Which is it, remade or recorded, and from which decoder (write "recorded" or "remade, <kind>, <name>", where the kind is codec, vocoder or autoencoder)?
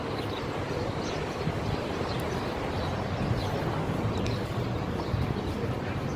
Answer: recorded